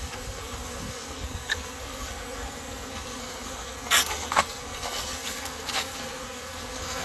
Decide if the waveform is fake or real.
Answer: fake